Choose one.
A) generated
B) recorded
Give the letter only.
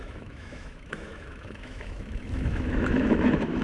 A